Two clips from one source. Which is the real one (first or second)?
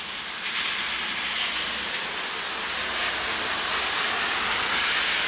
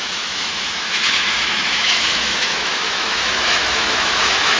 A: first